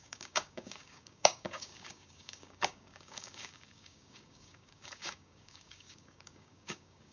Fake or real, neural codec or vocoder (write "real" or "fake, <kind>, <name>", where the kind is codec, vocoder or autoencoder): fake, codec, DAC